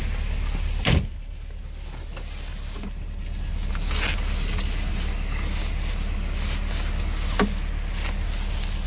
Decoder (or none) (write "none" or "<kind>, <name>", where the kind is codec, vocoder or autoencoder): none